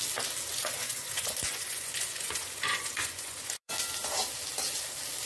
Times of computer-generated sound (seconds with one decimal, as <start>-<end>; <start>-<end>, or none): 0.5-3.7